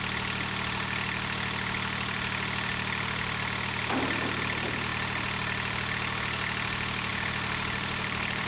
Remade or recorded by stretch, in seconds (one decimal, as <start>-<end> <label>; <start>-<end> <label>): 0.0-7.1 recorded; 7.1-8.5 remade